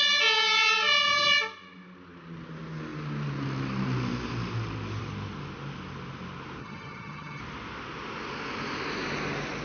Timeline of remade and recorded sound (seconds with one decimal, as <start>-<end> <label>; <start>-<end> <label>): 0.0-6.6 recorded; 6.6-7.4 remade; 7.4-9.6 recorded